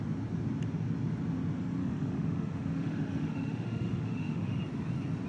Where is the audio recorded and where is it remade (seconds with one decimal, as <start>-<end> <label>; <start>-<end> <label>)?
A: 0.0-1.8 recorded; 1.8-4.6 remade; 4.6-5.3 recorded